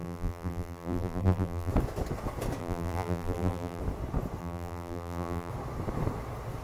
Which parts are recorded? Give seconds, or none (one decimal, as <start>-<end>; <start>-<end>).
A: 1.7-2.6; 3.8-4.4; 5.5-6.6